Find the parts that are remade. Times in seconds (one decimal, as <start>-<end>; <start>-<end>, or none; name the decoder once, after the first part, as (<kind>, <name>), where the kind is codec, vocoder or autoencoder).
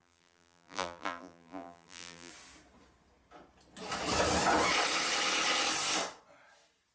0.0-2.3 (vocoder, BigVGAN v2)